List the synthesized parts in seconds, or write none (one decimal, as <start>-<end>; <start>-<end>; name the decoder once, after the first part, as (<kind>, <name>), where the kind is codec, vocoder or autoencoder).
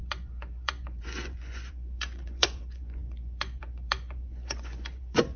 0.0-5.4 (vocoder, Vocos)